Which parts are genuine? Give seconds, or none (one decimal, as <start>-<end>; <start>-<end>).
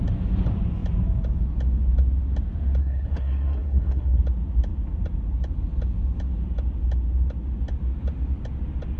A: 0.0-2.8; 4.2-9.0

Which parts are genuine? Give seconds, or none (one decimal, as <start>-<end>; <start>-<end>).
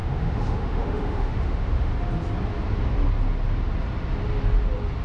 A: 1.9-5.0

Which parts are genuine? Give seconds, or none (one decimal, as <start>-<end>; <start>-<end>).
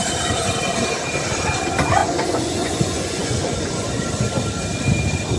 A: 0.0-2.0; 3.9-5.4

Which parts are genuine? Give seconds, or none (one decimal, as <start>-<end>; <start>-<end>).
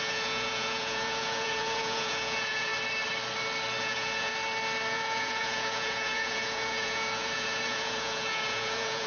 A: 2.7-3.8; 4.3-4.9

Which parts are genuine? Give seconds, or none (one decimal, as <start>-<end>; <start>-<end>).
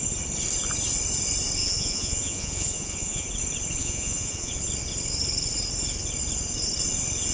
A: 0.0-1.6; 3.3-3.8; 4.5-7.3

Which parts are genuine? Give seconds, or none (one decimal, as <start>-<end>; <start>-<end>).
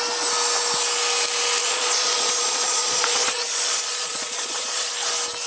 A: 0.0-1.6; 4.9-5.5